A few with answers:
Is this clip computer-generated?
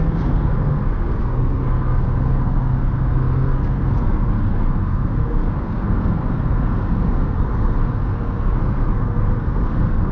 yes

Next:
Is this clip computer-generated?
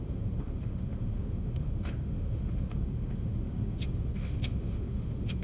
yes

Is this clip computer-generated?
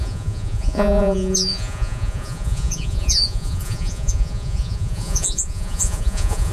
yes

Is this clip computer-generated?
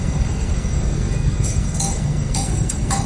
yes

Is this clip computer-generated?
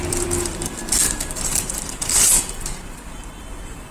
yes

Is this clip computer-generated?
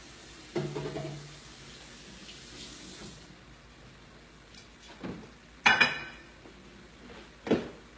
no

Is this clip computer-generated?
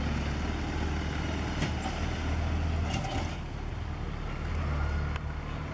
no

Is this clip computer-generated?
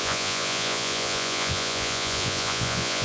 yes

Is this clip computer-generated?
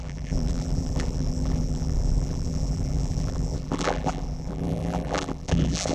yes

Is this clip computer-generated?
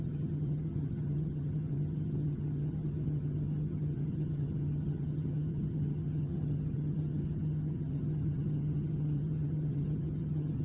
yes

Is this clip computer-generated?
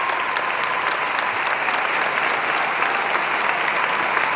no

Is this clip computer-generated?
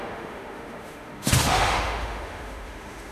yes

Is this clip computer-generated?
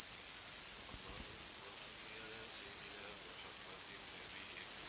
no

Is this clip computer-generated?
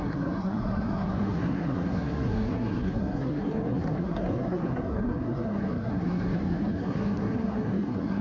yes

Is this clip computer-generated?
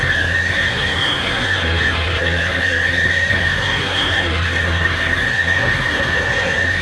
yes